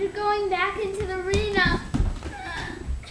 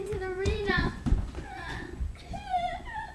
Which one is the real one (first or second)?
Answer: first